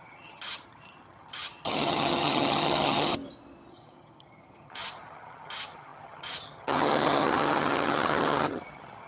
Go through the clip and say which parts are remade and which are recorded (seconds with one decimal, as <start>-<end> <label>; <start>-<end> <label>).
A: 0.0-3.1 remade; 3.1-3.7 recorded; 3.7-9.1 remade

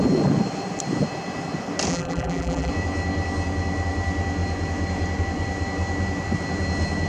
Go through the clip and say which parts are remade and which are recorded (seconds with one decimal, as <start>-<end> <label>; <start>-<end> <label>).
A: 0.0-1.9 recorded; 1.9-2.7 remade; 2.7-7.1 recorded